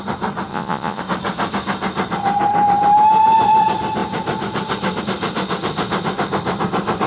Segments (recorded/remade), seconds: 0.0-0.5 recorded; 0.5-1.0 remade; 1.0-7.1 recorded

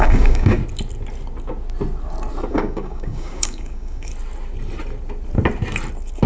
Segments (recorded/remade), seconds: 0.0-0.6 remade; 0.6-2.5 recorded; 2.5-4.1 remade; 4.1-6.3 recorded

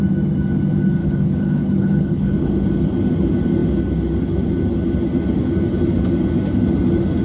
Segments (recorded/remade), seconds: 0.0-1.0 recorded; 1.0-2.5 remade; 2.5-7.2 recorded

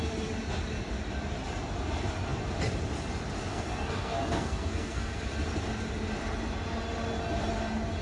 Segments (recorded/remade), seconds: 0.0-3.5 recorded; 3.5-5.2 remade; 5.2-8.0 recorded